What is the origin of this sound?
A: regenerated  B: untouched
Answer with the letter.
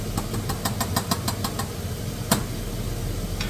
B